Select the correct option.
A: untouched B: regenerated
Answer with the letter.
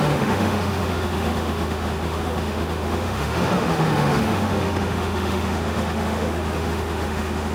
B